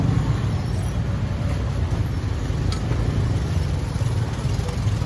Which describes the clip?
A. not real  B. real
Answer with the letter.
B